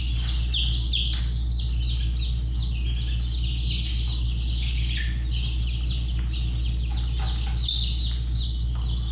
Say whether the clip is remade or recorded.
recorded